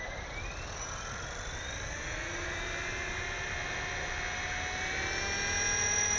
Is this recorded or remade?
recorded